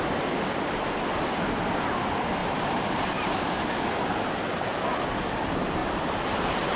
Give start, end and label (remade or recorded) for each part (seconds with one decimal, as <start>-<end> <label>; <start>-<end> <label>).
0.0-2.4 recorded; 2.4-3.7 remade; 3.7-5.8 recorded; 5.8-6.8 remade